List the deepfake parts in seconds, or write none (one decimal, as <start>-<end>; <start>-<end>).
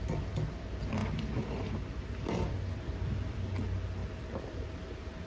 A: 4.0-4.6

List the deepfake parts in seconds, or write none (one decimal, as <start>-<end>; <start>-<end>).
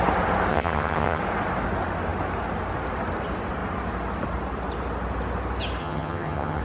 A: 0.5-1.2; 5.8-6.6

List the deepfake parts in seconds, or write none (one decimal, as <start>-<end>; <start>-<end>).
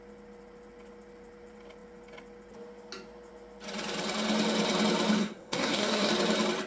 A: 5.2-6.1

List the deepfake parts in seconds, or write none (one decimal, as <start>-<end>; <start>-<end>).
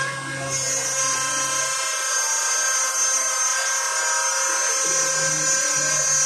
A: none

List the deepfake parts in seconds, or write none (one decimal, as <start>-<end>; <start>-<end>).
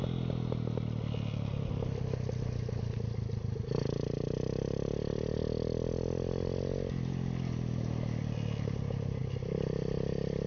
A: none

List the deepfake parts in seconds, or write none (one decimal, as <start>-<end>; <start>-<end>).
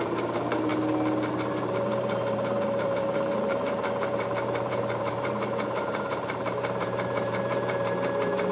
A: 0.0-0.7; 1.3-8.5